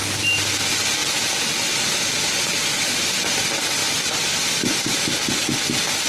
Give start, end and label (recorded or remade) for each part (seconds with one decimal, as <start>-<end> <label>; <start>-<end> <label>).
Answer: 0.0-6.1 recorded